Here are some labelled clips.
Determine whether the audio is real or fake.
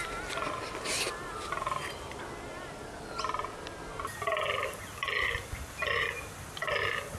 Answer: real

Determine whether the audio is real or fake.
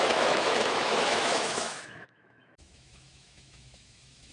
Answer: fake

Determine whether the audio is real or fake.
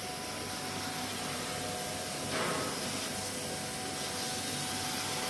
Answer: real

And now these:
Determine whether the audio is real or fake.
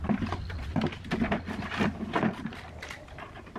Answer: real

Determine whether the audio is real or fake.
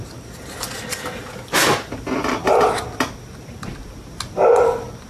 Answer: real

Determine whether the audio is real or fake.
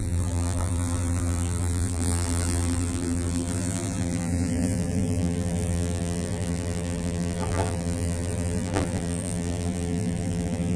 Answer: fake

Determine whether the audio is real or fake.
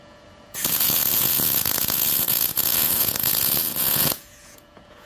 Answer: fake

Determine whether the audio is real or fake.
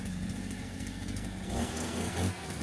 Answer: fake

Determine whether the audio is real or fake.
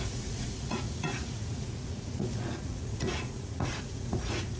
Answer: fake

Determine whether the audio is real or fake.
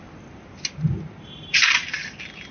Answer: real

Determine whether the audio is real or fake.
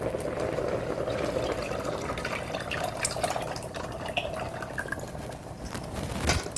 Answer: real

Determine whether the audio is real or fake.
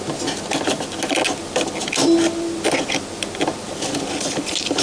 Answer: real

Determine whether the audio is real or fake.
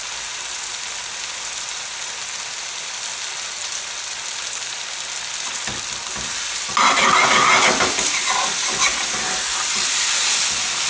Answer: real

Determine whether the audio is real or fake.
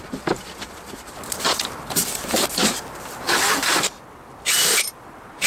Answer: fake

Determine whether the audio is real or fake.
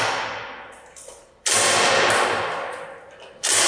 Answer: real